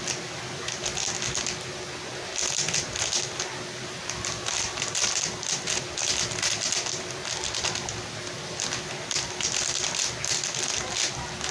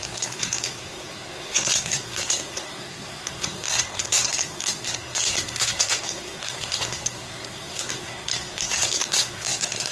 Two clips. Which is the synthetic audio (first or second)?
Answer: second